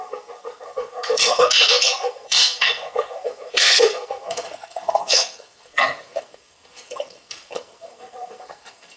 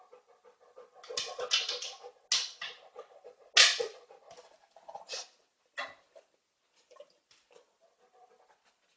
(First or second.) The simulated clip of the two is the first